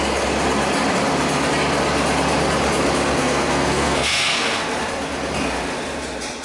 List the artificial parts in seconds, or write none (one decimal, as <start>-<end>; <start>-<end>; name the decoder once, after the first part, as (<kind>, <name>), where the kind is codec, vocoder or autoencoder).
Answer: 3.2-4.6 (codec, SNAC)